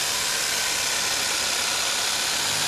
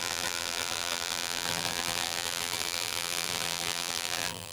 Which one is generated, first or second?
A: second